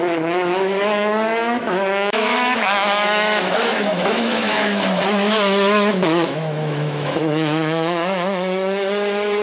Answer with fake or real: fake